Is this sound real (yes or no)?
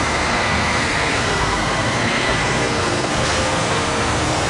no